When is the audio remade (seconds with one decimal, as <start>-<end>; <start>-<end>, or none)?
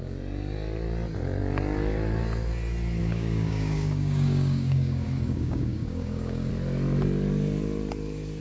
3.0-6.5